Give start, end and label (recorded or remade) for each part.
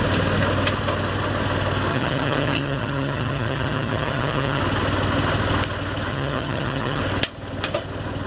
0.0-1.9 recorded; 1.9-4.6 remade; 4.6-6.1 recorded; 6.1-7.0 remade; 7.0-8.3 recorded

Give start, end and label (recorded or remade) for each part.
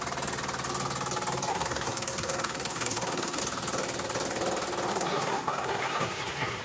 0.0-1.5 recorded; 1.5-3.4 remade; 3.4-4.9 recorded; 4.9-6.6 remade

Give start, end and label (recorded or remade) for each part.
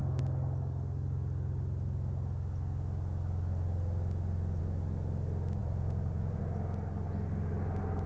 0.0-5.6 recorded; 5.6-6.4 remade; 6.4-8.1 recorded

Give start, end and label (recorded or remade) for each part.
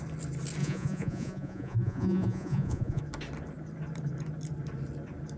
0.0-0.6 recorded; 0.6-3.0 remade; 3.0-5.4 recorded